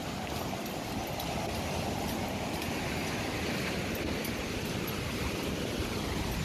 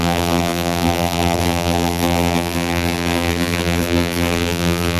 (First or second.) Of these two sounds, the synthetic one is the second